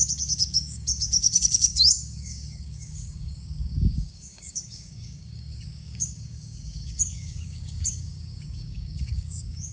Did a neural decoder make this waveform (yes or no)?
yes